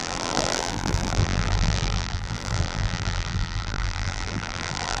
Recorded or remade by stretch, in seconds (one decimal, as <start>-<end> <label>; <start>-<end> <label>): 0.0-5.0 remade